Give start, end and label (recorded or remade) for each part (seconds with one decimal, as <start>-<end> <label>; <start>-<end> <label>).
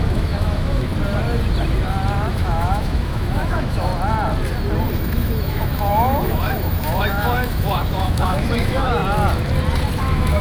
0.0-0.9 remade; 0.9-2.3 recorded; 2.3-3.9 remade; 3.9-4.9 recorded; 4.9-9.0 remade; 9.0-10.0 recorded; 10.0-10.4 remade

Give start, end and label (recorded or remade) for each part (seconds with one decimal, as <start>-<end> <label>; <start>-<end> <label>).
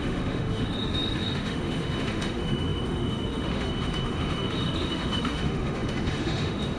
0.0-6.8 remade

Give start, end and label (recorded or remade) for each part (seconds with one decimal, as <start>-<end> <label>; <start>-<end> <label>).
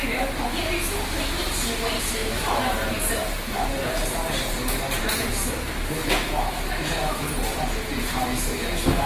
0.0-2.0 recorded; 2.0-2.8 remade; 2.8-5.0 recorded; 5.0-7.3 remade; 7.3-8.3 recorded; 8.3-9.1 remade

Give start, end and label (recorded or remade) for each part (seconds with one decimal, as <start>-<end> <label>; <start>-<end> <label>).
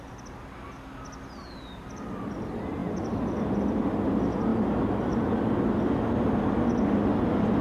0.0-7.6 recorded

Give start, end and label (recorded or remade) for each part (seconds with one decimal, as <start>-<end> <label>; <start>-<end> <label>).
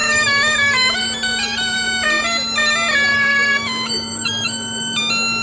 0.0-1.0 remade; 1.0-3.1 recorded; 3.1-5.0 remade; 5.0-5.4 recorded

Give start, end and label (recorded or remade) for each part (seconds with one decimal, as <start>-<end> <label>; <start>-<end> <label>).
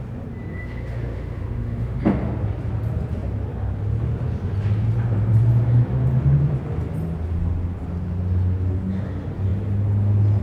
0.0-0.5 recorded; 0.5-2.0 remade; 2.0-10.4 recorded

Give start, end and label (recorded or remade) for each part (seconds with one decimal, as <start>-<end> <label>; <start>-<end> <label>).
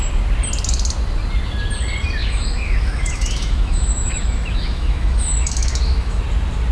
0.0-2.2 recorded; 2.2-6.2 remade; 6.2-6.7 recorded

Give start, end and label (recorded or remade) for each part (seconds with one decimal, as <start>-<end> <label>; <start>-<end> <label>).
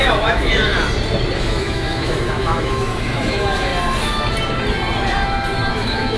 0.0-0.7 remade; 0.7-1.4 recorded; 1.4-3.7 remade; 3.7-5.7 recorded; 5.7-6.2 remade